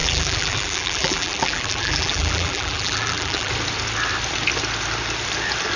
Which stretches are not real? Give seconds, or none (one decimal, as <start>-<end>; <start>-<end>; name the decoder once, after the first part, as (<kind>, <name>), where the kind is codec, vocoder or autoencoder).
0.0-3.5 (vocoder, BigVGAN v2)